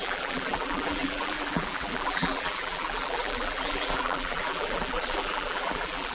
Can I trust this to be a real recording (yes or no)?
no